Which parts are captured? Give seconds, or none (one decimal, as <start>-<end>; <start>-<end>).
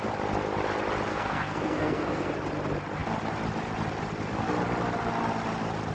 0.0-1.1; 2.3-5.9